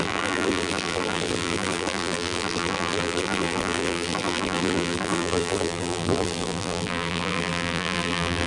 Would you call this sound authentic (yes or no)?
no